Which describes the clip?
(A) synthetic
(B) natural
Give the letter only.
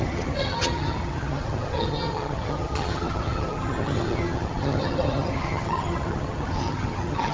A